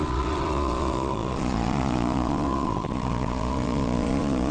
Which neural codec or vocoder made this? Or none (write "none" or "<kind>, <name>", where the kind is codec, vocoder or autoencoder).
vocoder, Vocos